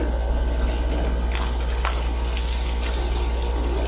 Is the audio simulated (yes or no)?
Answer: no